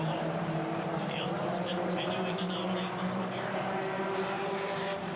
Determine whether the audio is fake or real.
fake